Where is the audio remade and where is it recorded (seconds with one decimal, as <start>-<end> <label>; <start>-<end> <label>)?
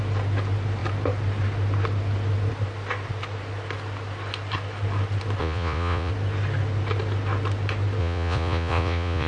0.0-5.4 recorded; 5.4-6.1 remade; 6.1-8.0 recorded; 8.0-9.3 remade